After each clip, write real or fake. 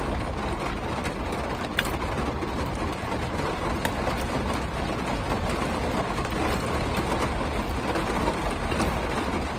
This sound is real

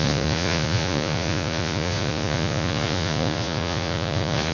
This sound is fake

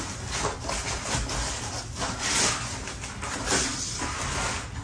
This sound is real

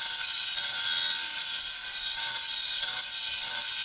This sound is real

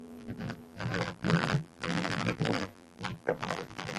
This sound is fake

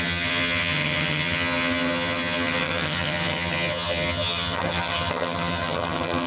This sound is fake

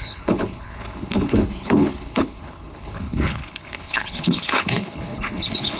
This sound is fake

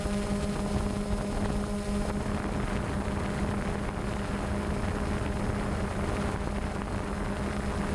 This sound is real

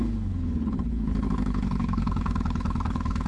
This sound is fake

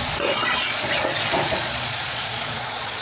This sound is fake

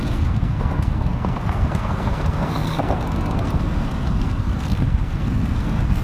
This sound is fake